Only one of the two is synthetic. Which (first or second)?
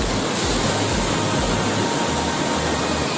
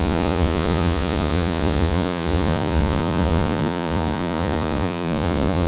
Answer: second